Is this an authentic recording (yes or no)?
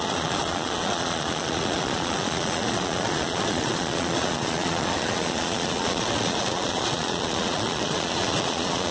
no